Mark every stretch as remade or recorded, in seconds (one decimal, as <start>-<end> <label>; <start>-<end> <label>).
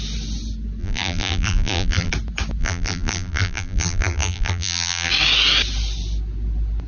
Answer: 0.0-0.8 recorded; 0.8-2.1 remade; 2.1-2.6 recorded; 2.6-5.1 remade; 5.1-6.9 recorded